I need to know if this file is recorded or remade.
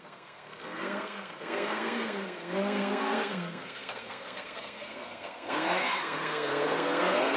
remade